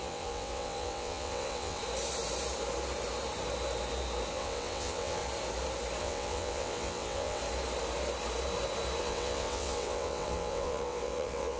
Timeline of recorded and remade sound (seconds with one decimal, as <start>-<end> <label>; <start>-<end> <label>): 0.0-1.8 remade; 1.8-4.3 recorded; 4.3-5.2 remade; 5.2-6.0 recorded; 6.0-7.4 remade; 7.4-9.0 recorded; 9.0-11.6 remade